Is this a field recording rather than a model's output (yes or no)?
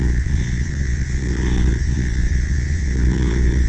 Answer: no